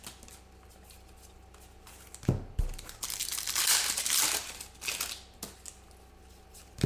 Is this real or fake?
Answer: real